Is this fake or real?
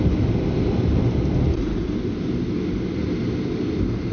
real